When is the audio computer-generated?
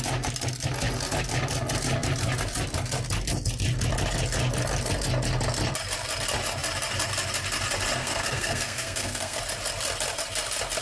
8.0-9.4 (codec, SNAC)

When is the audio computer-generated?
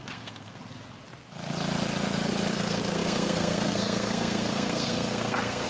0.0-0.6 (codec, SNAC); 2.5-5.7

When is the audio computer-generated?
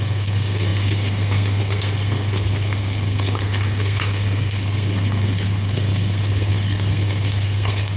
0.0-8.0 (codec, SNAC)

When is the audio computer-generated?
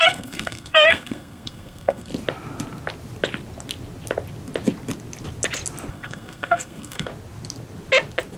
0.0-2.1 (codec, SNAC); 5.9-7.1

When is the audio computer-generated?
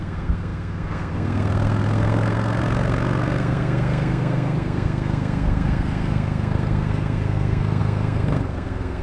0.0-9.0 (codec, SNAC)